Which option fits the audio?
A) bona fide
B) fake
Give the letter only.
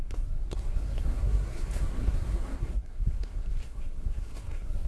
B